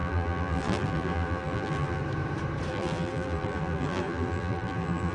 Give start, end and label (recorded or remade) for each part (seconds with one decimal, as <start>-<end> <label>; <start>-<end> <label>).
0.0-2.0 remade; 2.0-2.7 recorded; 2.7-5.1 remade